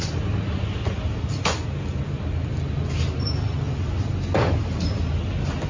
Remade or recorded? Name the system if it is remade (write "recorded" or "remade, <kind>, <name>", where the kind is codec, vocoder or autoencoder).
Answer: recorded